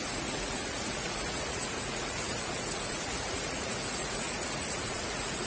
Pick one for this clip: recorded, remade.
remade